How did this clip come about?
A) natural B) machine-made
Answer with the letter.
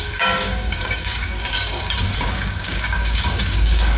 B